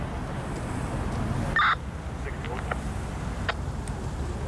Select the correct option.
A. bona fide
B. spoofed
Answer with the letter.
A